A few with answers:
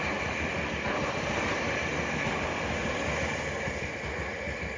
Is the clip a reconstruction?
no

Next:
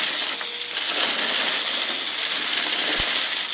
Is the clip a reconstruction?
no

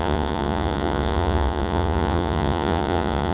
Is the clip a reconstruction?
yes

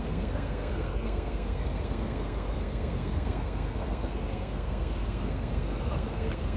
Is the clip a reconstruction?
yes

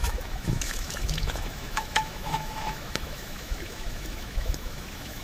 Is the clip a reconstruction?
yes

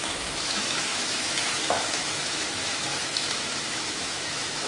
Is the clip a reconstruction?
yes